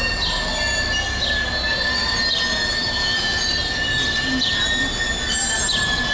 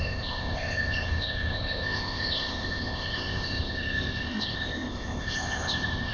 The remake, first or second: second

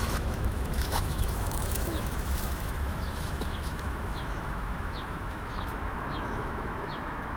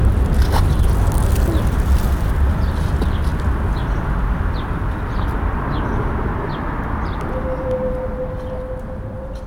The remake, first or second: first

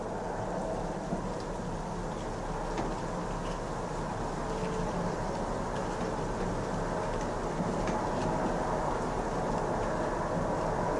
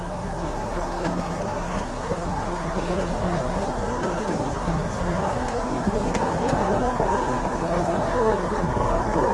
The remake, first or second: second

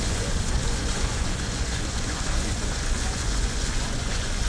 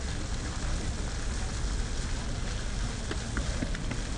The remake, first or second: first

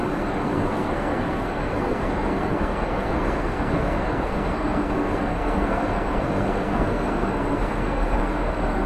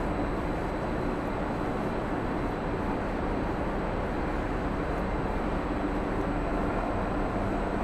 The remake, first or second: first